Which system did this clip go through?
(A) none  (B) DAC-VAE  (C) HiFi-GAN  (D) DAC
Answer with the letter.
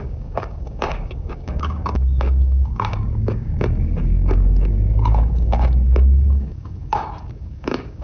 D